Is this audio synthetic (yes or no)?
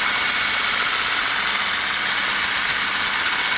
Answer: no